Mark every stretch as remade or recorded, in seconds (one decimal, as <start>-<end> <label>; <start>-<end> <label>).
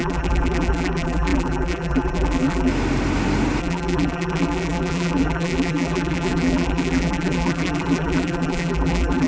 0.0-2.7 remade; 2.7-3.6 recorded; 3.6-9.3 remade